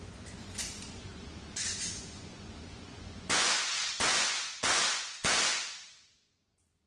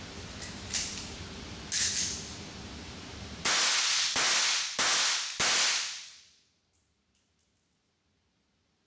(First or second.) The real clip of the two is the second